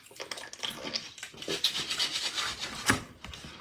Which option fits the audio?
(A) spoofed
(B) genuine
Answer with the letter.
B